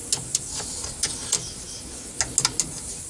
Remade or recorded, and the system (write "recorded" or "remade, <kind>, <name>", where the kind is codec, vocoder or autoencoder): recorded